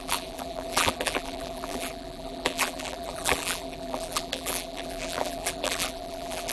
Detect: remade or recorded remade